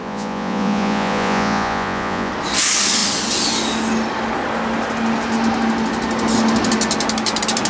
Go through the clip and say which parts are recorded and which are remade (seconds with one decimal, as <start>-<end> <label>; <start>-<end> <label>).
0.0-2.3 remade; 2.3-7.7 recorded